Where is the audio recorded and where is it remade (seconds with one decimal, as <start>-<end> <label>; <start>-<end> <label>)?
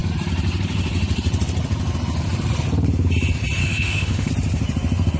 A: 0.0-3.6 recorded; 3.6-4.3 remade; 4.3-5.2 recorded